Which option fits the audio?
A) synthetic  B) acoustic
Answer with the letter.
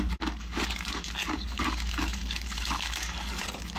A